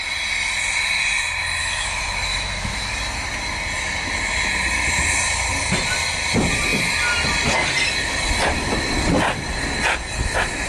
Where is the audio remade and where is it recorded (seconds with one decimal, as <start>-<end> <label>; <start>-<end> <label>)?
0.0-1.6 recorded; 1.6-2.9 remade; 2.9-10.7 recorded